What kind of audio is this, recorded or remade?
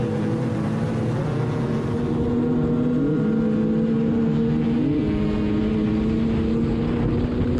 recorded